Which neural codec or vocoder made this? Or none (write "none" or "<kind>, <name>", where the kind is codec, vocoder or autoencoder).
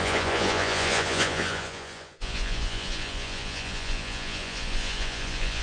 vocoder, Vocos